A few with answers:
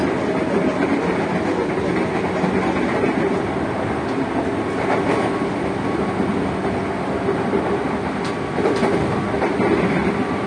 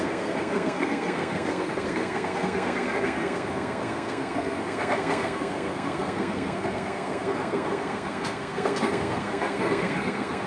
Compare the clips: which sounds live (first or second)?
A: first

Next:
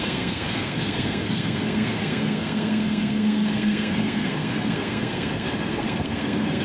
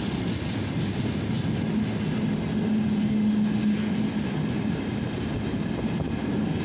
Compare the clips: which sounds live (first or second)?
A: second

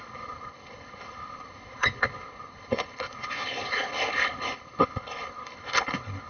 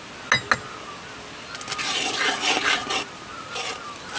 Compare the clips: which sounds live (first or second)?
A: second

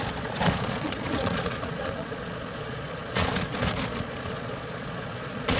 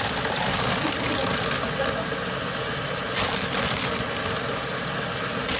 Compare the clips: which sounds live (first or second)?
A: second